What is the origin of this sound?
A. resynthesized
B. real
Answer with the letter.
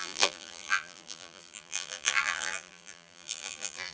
A